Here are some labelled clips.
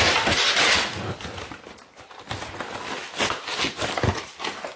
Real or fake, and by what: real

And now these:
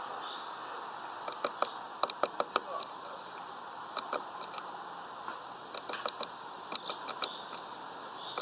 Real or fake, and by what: real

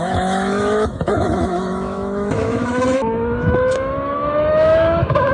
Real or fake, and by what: fake, autoencoder, DAC-VAE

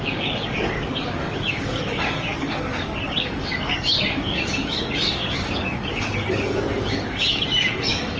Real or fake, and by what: fake, codec, DAC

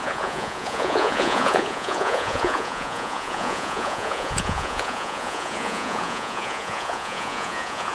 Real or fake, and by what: fake, vocoder, Vocos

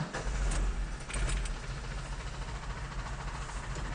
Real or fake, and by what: real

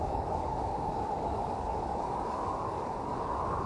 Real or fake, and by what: fake, codec, DAC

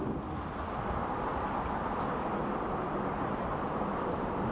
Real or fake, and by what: real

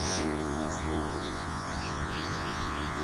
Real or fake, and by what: fake, vocoder, Vocos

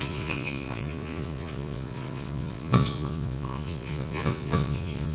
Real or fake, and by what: fake, vocoder, Vocos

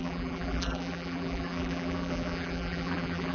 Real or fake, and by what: fake, vocoder, BigVGAN v2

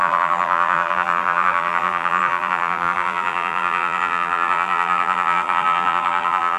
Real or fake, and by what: fake, vocoder, BigVGAN v2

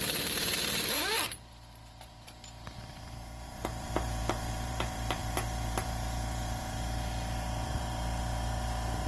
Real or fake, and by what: fake, vocoder, BigVGAN v2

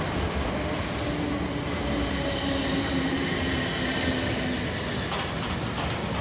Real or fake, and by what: real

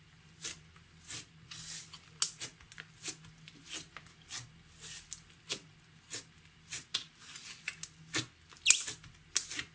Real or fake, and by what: real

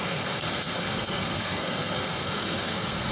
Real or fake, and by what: fake, codec, SNAC